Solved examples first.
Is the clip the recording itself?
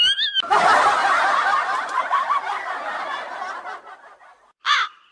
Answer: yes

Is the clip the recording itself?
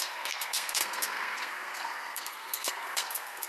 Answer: no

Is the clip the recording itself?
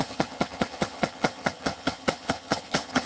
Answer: no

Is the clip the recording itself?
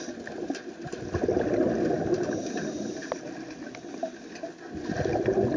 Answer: yes